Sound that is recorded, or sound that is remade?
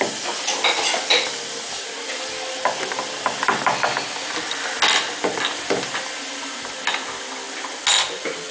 recorded